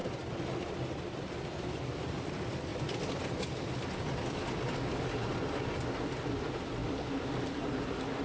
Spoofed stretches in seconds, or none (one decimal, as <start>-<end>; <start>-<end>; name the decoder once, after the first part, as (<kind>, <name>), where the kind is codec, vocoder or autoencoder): none